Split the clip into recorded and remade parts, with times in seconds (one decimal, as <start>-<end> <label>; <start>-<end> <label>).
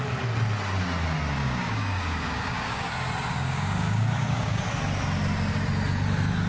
0.0-1.4 recorded; 1.4-2.9 remade; 2.9-3.3 recorded; 3.3-4.6 remade; 4.6-6.5 recorded